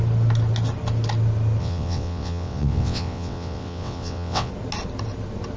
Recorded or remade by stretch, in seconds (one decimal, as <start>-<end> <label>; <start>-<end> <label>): 0.0-1.6 recorded; 1.6-4.5 remade; 4.5-5.6 recorded